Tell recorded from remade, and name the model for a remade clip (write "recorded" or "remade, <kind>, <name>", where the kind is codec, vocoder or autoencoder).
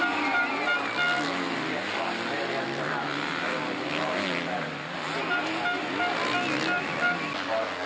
recorded